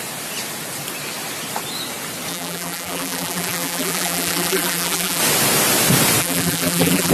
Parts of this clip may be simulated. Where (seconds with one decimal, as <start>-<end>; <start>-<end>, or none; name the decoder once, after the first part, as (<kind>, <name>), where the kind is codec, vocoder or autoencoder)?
2.3-5.2 (vocoder, BigVGAN v2); 6.2-7.1